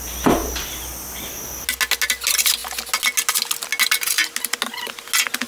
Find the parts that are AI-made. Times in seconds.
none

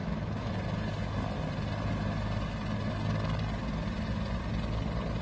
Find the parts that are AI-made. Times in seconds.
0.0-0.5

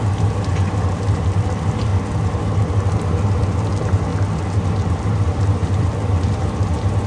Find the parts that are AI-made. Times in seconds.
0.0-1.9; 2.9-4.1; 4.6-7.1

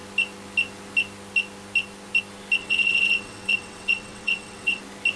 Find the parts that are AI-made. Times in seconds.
2.6-4.8

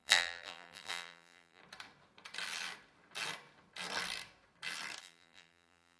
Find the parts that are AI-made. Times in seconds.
0.0-1.6; 5.0-6.0

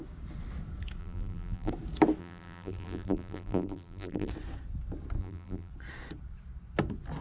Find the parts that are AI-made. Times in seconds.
1.0-1.7; 2.2-4.3; 5.2-5.7